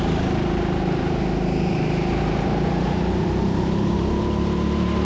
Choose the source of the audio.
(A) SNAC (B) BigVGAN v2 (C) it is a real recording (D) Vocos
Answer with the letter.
C